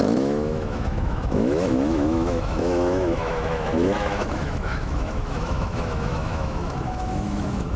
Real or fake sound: fake